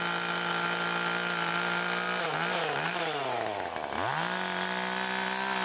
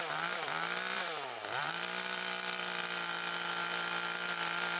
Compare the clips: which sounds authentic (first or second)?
first